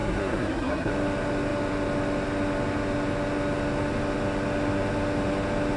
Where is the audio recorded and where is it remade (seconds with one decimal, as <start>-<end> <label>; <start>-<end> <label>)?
0.0-0.9 remade; 0.9-5.8 recorded

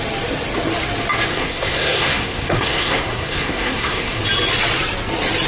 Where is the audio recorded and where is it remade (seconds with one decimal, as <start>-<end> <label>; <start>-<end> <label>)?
0.0-1.3 recorded; 1.3-4.2 remade; 4.2-5.5 recorded

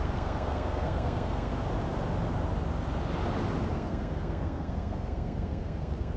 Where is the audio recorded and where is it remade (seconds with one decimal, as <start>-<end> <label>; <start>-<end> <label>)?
0.0-1.5 remade; 1.5-3.7 recorded; 3.7-6.2 remade

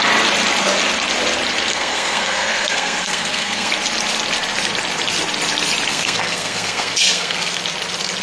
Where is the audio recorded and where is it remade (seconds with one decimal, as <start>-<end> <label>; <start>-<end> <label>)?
0.0-1.7 recorded; 1.7-3.7 remade; 3.7-5.9 recorded; 5.9-7.6 remade; 7.6-8.2 recorded

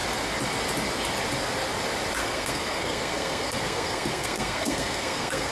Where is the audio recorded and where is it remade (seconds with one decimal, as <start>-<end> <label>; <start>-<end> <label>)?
0.0-2.2 recorded; 2.2-5.5 remade

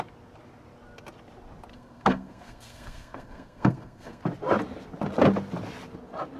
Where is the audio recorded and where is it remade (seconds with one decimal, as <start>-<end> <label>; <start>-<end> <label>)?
0.0-1.7 recorded; 1.7-4.2 remade; 4.2-6.4 recorded

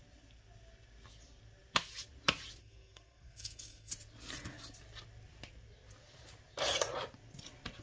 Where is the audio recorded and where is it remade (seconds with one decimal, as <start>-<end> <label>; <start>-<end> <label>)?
0.0-2.6 recorded; 2.6-3.9 remade; 3.9-7.8 recorded

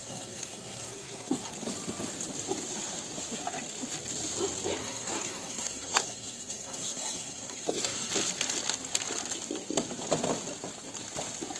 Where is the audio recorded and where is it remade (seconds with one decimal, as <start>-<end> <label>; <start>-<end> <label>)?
0.0-1.5 remade; 1.5-4.8 recorded; 4.8-8.1 remade; 8.1-11.6 recorded